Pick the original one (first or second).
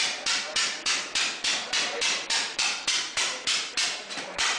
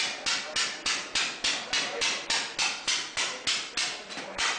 second